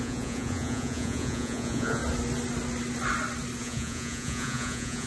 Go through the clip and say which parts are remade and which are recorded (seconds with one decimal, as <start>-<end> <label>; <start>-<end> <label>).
0.0-2.0 remade; 2.0-3.6 recorded; 3.6-5.1 remade